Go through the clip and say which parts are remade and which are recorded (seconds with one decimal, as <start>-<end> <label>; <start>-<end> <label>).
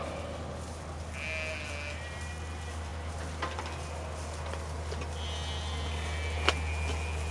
0.0-7.3 recorded